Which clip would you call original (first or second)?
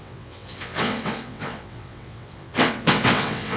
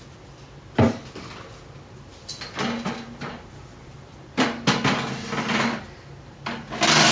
second